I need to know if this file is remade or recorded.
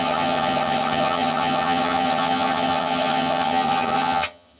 remade